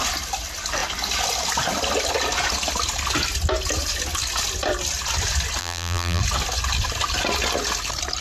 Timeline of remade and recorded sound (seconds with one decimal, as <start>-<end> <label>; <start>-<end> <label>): 0.0-5.6 recorded; 5.6-6.2 remade; 6.2-8.2 recorded